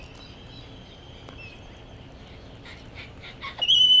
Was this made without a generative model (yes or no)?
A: yes